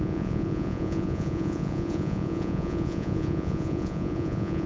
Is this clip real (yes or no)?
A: no